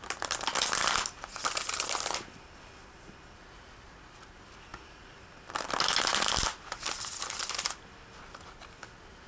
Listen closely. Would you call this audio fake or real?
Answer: real